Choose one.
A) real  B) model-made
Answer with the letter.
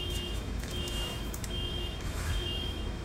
B